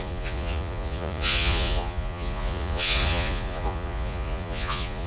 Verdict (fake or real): fake